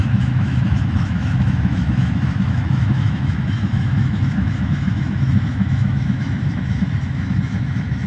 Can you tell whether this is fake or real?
fake